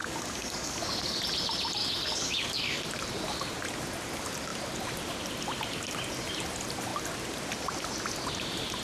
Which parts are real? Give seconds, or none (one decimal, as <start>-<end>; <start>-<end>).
1.2-1.8; 2.8-8.8